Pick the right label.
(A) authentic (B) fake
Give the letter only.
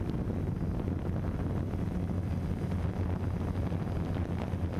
A